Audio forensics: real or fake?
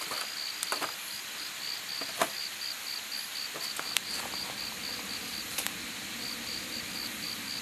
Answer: real